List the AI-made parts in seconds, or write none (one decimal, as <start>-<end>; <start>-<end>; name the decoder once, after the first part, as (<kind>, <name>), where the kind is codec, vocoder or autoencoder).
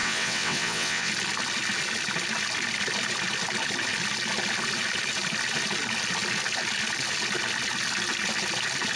0.0-1.1 (vocoder, WaveNeXt)